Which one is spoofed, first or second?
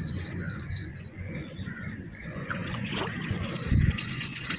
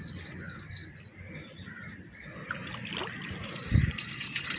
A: first